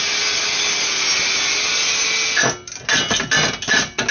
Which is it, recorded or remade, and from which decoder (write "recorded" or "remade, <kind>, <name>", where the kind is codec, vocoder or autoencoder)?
recorded